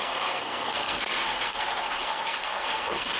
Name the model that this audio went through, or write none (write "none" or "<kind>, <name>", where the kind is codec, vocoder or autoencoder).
codec, SNAC